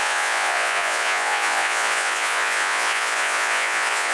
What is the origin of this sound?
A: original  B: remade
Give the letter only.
B